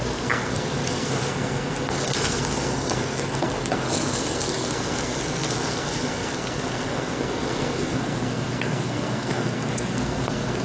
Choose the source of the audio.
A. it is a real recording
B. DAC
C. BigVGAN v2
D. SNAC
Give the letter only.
D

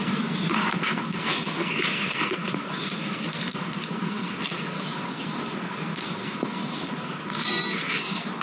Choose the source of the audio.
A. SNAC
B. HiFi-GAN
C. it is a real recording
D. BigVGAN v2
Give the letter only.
A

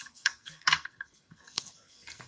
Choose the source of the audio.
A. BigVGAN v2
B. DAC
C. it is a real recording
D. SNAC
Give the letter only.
D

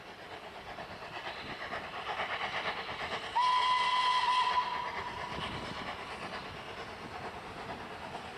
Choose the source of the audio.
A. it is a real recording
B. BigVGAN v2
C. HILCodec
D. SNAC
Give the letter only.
A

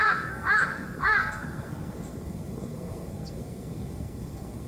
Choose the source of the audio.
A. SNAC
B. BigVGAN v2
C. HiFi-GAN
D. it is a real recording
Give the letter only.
A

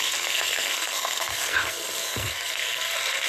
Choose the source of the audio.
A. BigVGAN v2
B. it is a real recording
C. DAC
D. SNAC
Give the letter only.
D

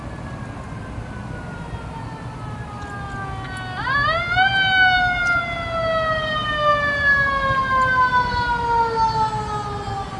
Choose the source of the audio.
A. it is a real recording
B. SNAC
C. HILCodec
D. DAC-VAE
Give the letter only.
A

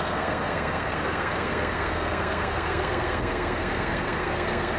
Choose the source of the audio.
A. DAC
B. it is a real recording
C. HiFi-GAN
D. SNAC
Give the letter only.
D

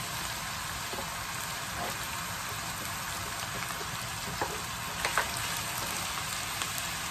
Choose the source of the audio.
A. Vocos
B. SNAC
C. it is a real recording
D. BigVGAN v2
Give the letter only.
C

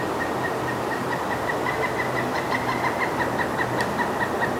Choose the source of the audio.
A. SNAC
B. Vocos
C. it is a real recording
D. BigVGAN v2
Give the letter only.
C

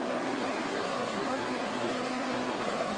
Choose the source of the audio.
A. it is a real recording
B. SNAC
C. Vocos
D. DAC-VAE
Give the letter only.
B